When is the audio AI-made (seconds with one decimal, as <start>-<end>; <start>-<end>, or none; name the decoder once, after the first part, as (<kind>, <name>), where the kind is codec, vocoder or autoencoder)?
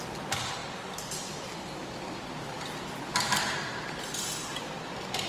0.0-0.6 (vocoder, BigVGAN v2); 3.0-3.4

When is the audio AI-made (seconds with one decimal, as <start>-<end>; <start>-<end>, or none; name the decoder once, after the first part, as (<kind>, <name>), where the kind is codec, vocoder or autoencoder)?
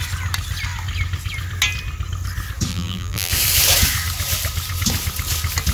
2.7-3.3 (vocoder, BigVGAN v2)